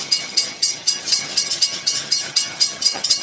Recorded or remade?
remade